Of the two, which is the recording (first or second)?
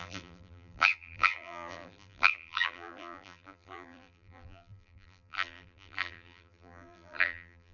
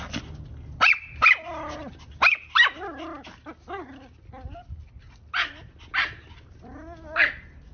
second